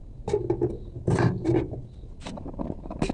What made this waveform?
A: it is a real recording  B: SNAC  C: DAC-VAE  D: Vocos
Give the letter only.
A